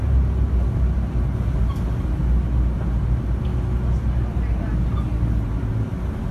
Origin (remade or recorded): recorded